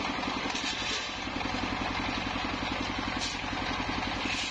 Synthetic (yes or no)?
no